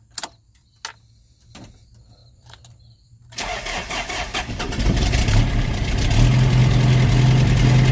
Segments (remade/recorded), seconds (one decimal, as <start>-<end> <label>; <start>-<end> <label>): 0.0-2.2 recorded; 2.2-5.8 remade; 5.8-7.9 recorded

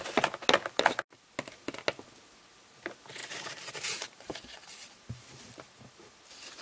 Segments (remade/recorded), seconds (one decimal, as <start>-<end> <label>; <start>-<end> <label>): 0.0-3.2 recorded; 3.2-6.1 remade; 6.1-6.6 recorded

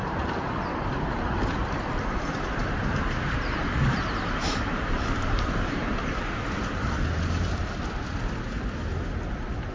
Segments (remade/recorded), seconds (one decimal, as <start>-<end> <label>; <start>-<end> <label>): 0.0-2.6 recorded; 2.6-5.9 remade; 5.9-9.7 recorded

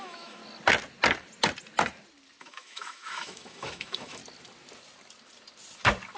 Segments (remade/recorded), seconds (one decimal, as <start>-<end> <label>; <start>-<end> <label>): 0.0-0.4 remade; 0.4-2.4 recorded; 2.4-4.2 remade; 4.2-6.2 recorded